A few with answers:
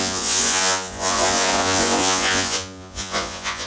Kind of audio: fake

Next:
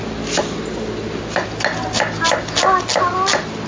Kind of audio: real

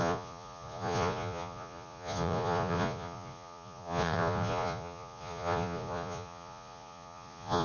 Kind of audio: fake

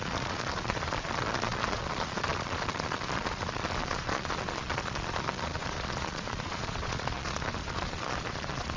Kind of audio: fake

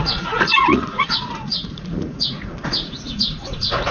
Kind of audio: fake